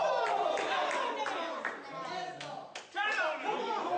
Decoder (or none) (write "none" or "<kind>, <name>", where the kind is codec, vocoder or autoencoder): none